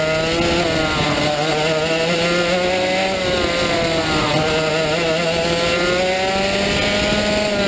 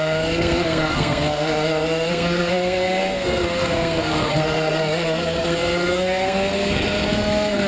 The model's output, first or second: second